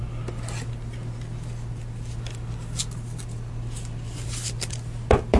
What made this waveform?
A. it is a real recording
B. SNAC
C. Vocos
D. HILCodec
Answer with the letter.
A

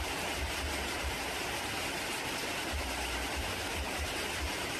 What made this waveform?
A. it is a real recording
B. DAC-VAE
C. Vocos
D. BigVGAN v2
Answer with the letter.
A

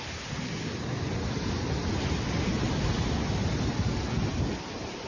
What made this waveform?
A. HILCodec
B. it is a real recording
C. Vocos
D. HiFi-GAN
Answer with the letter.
B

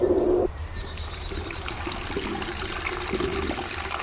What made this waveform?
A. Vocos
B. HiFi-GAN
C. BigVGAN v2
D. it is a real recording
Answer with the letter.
D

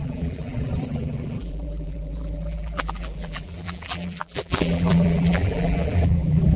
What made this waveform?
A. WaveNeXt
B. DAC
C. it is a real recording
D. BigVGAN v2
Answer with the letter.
D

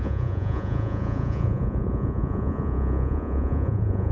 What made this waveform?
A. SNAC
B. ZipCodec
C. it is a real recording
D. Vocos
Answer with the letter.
D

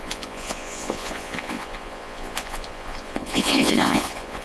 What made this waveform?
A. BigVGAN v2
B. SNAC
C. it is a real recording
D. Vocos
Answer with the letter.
D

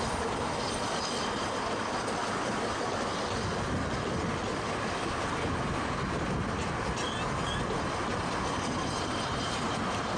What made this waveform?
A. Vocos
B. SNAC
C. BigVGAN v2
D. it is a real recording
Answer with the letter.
D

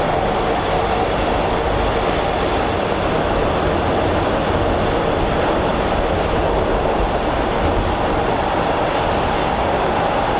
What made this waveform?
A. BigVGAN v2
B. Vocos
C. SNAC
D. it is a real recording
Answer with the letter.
D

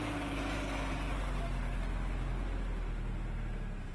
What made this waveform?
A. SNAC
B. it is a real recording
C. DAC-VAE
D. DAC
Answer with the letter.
B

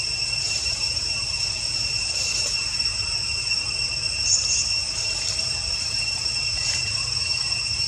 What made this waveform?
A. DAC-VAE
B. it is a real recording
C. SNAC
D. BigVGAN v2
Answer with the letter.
D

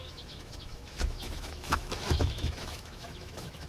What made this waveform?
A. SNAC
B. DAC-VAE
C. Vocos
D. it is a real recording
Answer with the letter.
B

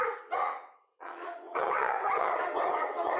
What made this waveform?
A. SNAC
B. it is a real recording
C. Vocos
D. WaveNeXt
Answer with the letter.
D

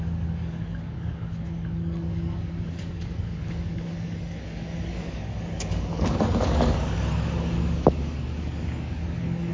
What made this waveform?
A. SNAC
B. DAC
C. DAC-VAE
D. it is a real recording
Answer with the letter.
B